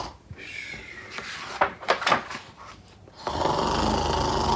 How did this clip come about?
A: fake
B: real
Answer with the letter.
B